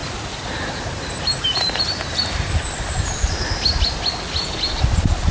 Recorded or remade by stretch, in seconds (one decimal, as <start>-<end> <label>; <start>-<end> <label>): 0.0-2.7 remade; 2.7-5.3 recorded